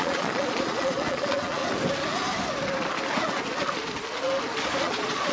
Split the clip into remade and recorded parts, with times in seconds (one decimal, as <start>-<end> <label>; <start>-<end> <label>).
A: 0.0-1.6 remade; 1.6-4.8 recorded; 4.8-5.3 remade

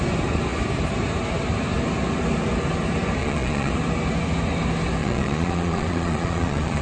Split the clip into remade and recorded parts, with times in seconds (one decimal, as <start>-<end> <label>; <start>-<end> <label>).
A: 0.0-3.2 recorded; 3.2-3.7 remade; 3.7-5.0 recorded; 5.0-6.8 remade

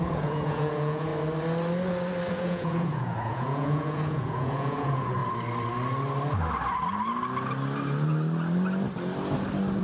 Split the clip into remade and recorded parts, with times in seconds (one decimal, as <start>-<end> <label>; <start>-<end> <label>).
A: 0.0-1.1 remade; 1.1-2.3 recorded; 2.3-5.2 remade; 5.2-9.8 recorded

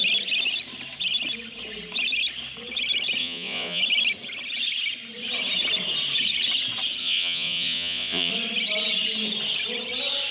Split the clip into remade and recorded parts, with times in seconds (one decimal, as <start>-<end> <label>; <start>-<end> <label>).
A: 0.0-3.2 recorded; 3.2-3.8 remade; 3.8-7.0 recorded; 7.0-8.3 remade; 8.3-10.3 recorded